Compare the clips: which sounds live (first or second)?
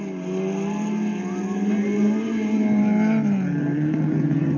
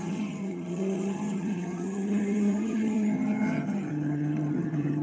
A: first